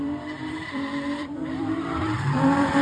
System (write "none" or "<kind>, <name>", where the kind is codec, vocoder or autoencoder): vocoder, BigVGAN v2